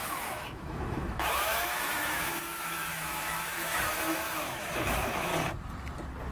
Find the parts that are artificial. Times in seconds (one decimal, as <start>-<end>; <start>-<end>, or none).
0.0-5.3